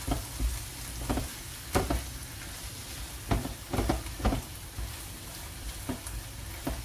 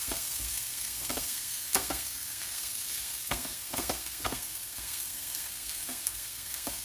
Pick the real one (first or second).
first